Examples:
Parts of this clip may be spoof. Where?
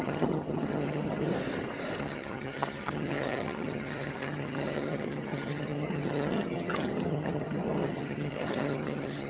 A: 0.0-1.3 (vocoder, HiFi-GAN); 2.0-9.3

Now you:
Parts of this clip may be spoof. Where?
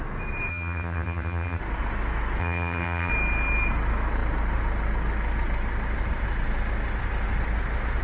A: 0.5-1.6 (vocoder, HiFi-GAN); 2.4-3.1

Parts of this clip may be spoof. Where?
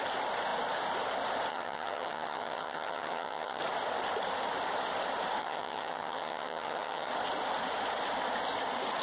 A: 1.5-3.6 (vocoder, HiFi-GAN); 5.4-7.1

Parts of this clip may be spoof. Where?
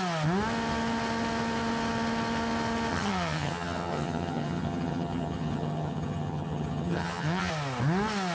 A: 2.9-7.5 (vocoder, HiFi-GAN)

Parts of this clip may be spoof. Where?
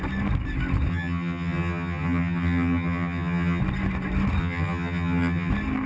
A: 0.9-3.6 (vocoder, HiFi-GAN); 4.4-5.5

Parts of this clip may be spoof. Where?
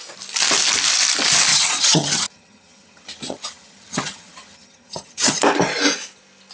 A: 1.5-5.4 (vocoder, HiFi-GAN)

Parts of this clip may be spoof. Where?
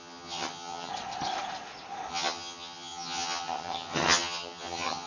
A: 0.0-0.9 (vocoder, HiFi-GAN); 2.1-5.1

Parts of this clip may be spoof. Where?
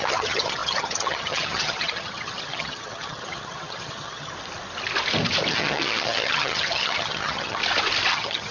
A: 0.0-4.3 (vocoder, HiFi-GAN); 5.5-7.6; 8.1-8.5